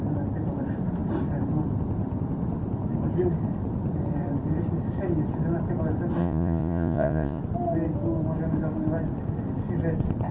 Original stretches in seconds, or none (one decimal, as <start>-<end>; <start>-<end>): 0.0-6.2; 7.4-10.3